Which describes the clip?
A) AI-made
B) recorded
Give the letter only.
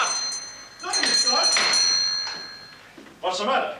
B